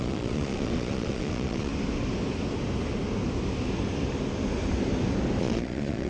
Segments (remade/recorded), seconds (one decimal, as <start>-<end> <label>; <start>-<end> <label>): 0.0-1.7 remade; 1.7-5.4 recorded; 5.4-6.1 remade